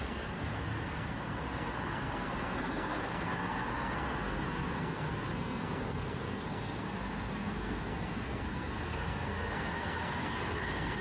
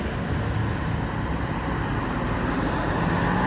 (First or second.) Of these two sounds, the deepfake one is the first